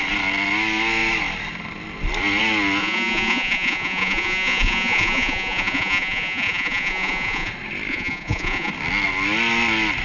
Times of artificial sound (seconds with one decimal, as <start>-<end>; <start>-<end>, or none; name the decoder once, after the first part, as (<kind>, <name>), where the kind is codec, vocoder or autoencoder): 2.8-7.5 (vocoder, Vocos); 7.9-8.7